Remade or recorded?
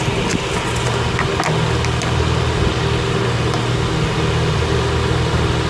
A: recorded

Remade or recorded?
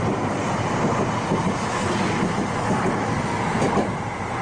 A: recorded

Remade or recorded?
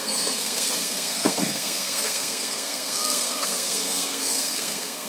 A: remade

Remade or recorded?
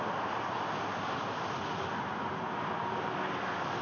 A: recorded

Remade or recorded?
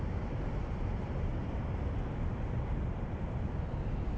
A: recorded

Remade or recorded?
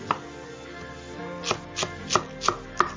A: recorded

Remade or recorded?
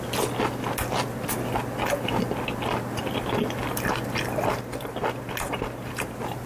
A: recorded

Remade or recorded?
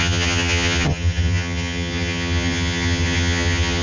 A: remade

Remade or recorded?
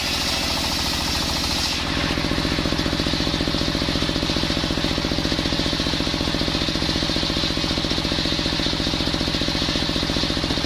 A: recorded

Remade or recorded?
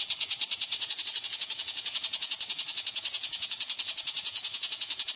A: remade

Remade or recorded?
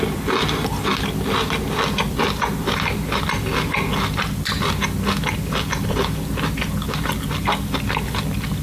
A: recorded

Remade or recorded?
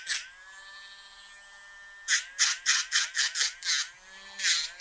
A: recorded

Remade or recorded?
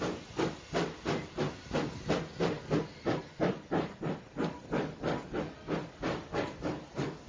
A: recorded